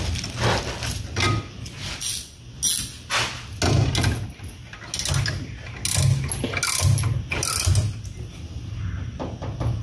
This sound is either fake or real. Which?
real